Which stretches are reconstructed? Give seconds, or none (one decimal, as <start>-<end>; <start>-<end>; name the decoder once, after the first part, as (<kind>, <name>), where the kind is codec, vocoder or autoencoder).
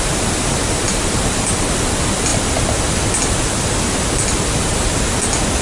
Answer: none